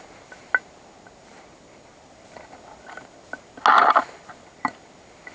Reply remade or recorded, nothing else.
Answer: recorded